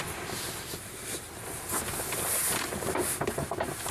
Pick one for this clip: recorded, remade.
recorded